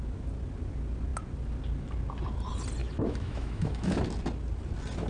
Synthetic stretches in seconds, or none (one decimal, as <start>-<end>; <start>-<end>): 2.8-4.0

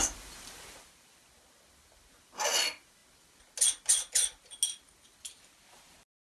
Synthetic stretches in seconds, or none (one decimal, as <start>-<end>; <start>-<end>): none